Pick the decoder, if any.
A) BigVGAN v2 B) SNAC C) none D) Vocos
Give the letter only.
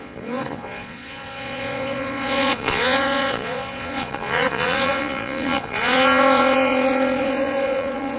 D